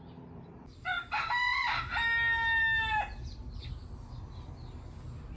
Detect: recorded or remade recorded